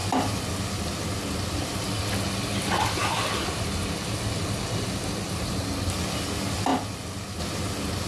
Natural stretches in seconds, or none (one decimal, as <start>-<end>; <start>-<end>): 0.0-8.1

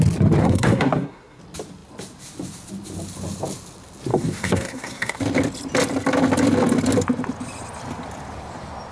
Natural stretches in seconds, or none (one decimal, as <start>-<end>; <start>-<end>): 0.0-0.4; 1.4-4.1; 5.2-8.9

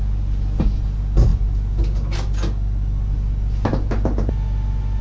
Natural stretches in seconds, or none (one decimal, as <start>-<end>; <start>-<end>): 0.0-5.0

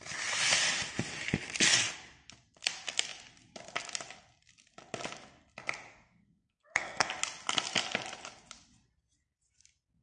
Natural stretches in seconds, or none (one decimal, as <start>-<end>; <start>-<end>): 0.0-5.9; 7.1-10.0

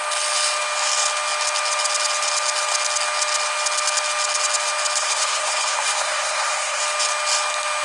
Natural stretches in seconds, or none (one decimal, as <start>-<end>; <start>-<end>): 0.0-5.0; 6.8-7.8

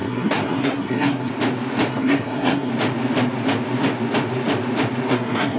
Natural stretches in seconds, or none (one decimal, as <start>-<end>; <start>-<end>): 1.3-1.9; 2.7-5.1

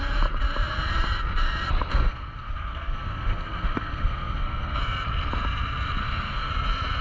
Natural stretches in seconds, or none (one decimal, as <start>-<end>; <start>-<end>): 0.0-1.9; 4.8-6.0; 6.5-7.0

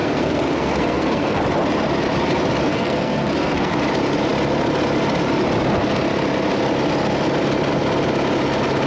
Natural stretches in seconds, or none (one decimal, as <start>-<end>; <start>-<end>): 1.4-2.7; 3.8-8.9